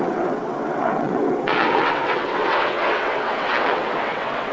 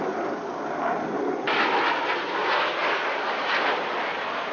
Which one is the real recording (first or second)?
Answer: second